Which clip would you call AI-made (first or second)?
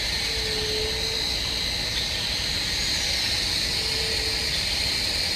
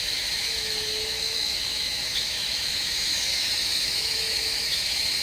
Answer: second